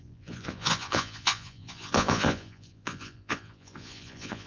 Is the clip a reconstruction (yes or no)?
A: yes